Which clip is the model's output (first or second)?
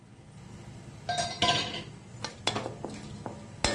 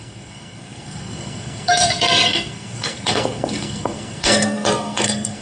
second